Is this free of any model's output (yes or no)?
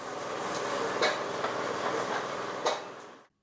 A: yes